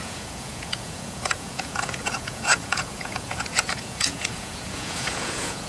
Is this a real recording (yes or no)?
no